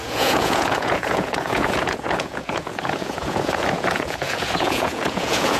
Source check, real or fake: fake